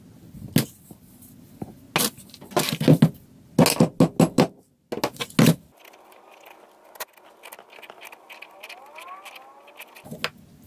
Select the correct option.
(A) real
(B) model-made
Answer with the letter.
A